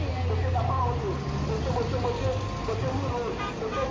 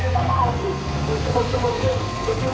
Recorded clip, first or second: first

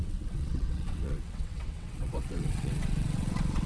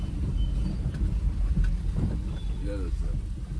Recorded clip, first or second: second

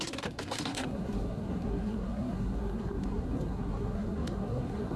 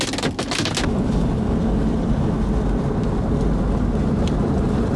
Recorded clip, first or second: second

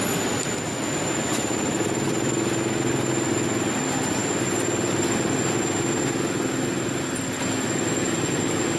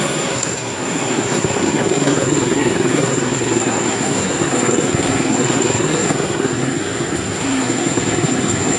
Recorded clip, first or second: first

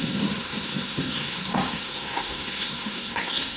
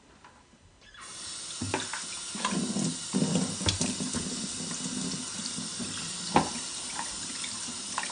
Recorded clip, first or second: second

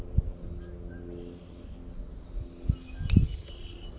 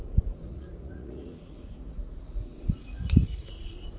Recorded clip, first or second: first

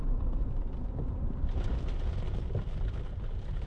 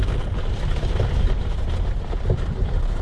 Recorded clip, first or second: second